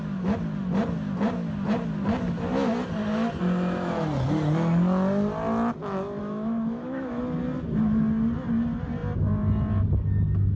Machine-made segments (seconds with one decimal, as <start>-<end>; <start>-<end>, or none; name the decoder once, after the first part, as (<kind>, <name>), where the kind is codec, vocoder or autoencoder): 6.2-7.2 (autoencoder, DAC-VAE)